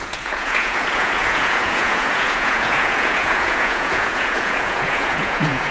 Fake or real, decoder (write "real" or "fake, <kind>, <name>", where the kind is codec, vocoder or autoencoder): fake, vocoder, Vocos